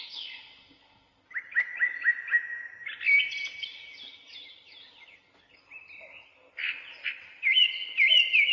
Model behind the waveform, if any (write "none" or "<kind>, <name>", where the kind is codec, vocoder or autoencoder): none